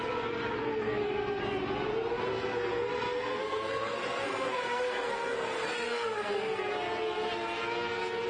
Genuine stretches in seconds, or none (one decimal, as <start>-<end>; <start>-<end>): 0.0-0.6; 1.4-2.3; 6.6-8.3